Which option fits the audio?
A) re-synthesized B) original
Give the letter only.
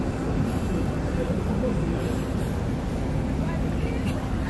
B